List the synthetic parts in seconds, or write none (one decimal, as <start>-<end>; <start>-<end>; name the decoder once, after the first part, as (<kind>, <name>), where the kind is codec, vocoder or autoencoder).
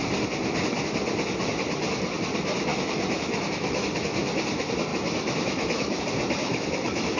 2.7-3.9 (autoencoder, DAC-VAE); 4.9-6.0; 6.4-7.2